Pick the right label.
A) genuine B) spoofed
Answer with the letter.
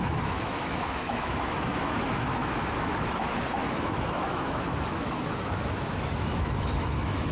B